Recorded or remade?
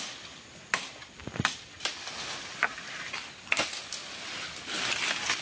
recorded